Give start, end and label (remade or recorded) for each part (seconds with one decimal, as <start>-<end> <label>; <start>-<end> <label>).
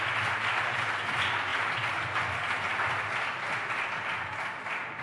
0.0-5.0 recorded